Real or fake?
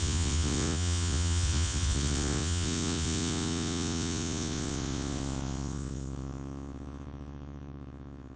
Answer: fake